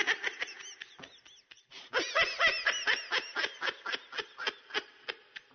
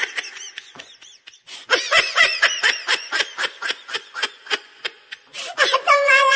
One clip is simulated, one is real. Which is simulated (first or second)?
second